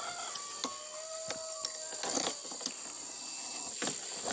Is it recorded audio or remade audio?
recorded